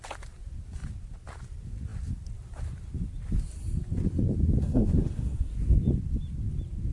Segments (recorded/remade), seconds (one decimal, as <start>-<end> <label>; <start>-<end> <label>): 0.0-4.6 recorded; 4.6-5.5 remade; 5.5-6.9 recorded